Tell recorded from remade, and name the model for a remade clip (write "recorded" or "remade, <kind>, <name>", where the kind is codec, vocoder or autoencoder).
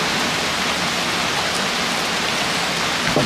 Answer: recorded